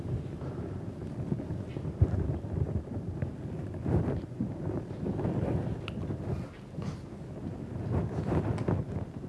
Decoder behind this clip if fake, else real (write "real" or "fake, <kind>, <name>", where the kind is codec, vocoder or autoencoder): real